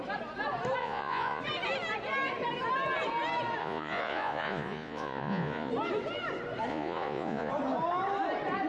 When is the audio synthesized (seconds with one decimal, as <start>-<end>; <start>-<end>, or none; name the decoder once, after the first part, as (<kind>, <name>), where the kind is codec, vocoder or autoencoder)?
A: 0.8-1.4 (vocoder, Vocos); 3.6-5.7; 6.7-7.5